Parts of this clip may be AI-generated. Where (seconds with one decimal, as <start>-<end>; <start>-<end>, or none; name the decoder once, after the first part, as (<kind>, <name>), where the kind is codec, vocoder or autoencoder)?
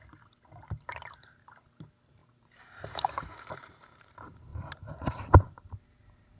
0.0-6.4 (vocoder, BigVGAN v2)